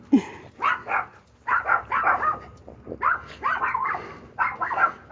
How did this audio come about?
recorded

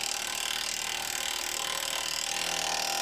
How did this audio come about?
recorded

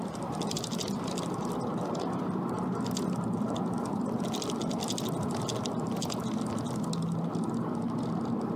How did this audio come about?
recorded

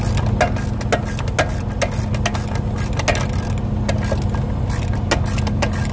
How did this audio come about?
recorded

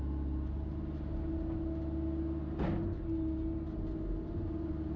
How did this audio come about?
recorded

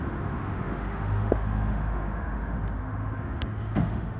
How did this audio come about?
remade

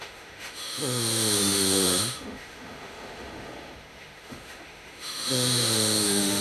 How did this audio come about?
remade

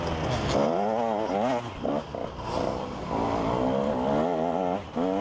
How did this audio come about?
recorded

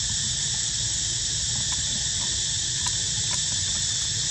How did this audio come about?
recorded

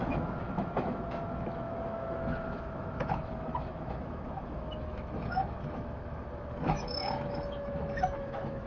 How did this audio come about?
remade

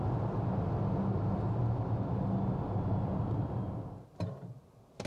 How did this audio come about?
recorded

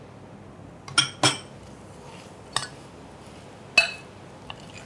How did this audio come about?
recorded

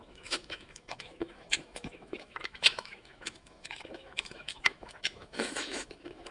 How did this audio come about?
remade